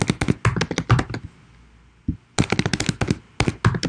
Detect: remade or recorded recorded